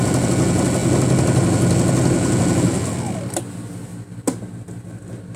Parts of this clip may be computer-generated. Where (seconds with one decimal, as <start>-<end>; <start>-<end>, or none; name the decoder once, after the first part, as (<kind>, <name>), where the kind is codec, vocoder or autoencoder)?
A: none